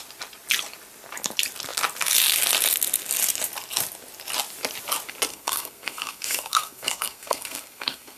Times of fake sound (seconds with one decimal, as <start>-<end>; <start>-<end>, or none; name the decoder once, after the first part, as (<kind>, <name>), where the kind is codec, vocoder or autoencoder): 5.3-8.2 (codec, SNAC)